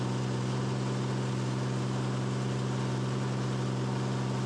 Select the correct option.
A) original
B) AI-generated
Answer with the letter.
A